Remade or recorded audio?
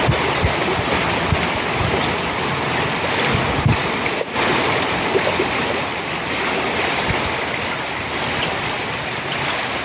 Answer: recorded